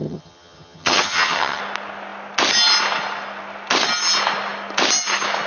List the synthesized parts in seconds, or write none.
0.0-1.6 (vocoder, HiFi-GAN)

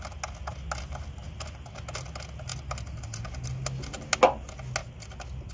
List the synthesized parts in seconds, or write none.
none

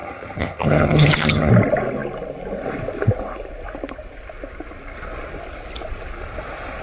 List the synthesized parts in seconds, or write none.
0.0-1.5 (vocoder, HiFi-GAN)

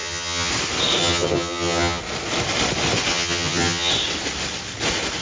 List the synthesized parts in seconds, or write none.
0.0-0.5 (vocoder, HiFi-GAN); 1.0-2.0; 3.1-3.9